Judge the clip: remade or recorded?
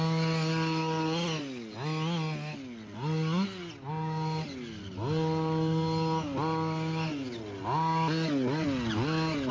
recorded